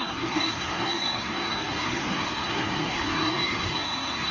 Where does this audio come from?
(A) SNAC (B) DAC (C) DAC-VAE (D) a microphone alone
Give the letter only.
A